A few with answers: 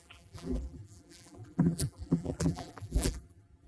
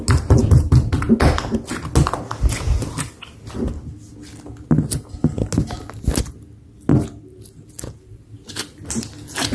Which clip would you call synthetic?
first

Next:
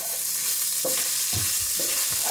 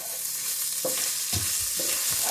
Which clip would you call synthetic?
first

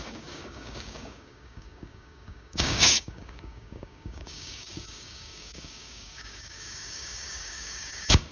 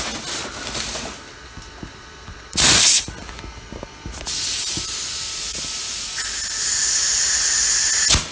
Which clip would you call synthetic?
first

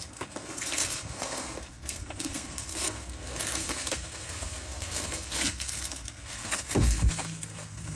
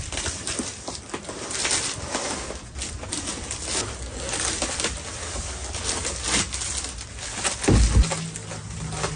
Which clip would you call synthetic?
first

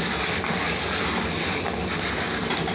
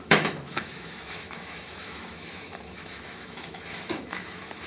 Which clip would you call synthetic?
second